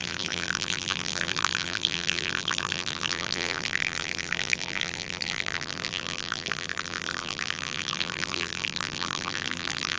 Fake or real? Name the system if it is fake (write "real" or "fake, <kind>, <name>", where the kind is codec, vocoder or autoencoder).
fake, vocoder, BigVGAN v2